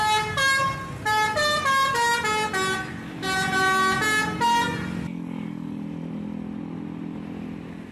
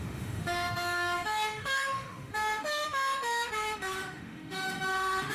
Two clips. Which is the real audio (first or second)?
first